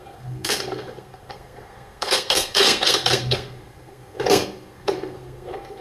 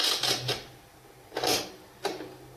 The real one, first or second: second